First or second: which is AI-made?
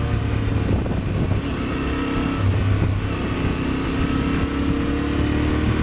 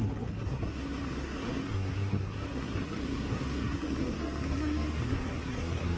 second